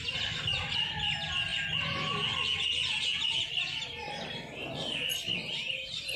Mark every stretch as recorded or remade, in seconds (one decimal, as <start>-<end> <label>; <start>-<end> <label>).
0.0-6.2 recorded